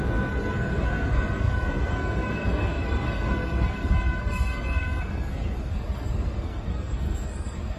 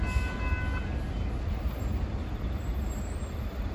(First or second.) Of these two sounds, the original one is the second